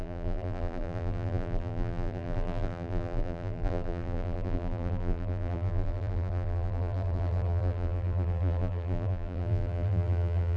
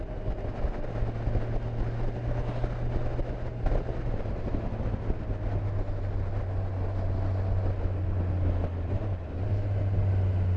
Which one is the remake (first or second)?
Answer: first